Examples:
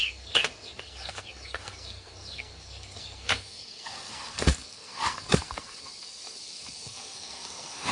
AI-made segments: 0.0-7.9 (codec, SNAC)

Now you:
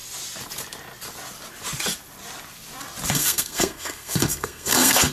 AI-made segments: 3.1-5.1 (codec, SNAC)

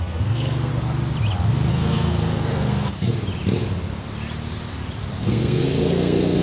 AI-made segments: 0.0-0.7 (codec, SNAC); 1.7-3.1; 5.2-6.4